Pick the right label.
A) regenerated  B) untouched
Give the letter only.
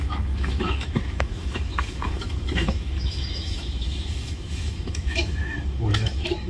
A